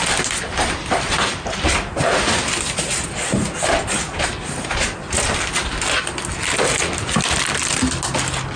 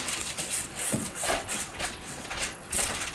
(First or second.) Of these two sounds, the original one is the first